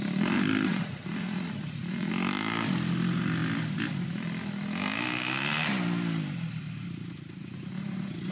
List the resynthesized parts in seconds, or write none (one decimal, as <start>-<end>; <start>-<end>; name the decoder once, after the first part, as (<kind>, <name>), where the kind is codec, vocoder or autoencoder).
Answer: 0.7-2.1 (vocoder, Vocos)